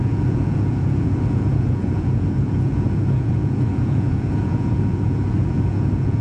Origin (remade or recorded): remade